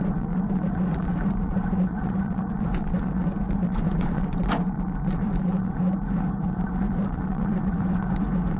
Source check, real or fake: fake